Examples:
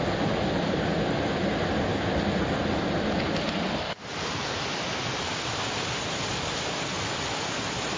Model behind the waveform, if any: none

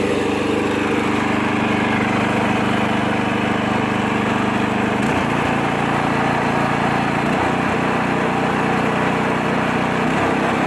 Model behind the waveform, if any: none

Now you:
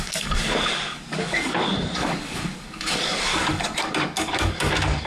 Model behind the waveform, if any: codec, DAC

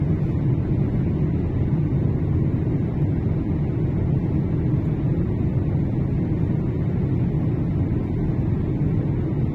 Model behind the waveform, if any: none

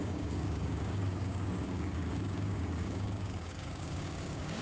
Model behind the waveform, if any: codec, DAC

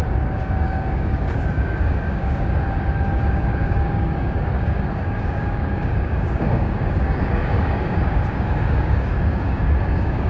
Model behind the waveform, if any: codec, DAC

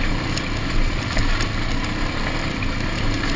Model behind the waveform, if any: none